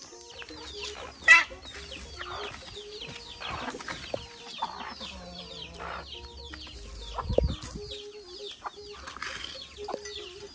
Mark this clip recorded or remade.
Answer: recorded